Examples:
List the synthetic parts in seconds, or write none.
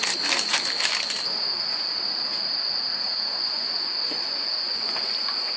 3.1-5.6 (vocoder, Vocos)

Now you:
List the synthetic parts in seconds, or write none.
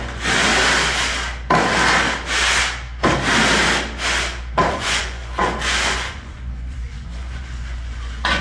0.0-0.5 (vocoder, Vocos); 4.7-8.4